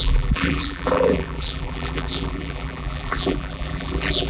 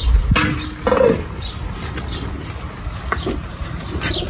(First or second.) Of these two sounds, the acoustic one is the second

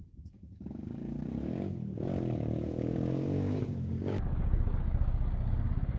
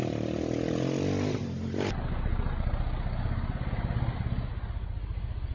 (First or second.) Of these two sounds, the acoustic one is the second